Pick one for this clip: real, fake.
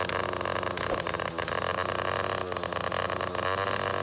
real